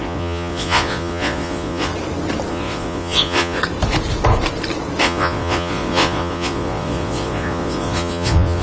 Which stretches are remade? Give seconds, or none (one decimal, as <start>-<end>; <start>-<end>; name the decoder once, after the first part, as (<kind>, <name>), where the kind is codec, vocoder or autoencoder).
0.0-1.9 (vocoder, Vocos); 2.5-3.6; 5.0-8.6